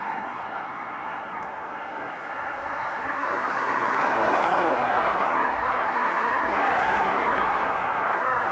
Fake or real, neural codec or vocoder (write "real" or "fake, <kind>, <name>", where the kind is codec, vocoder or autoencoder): fake, codec, SNAC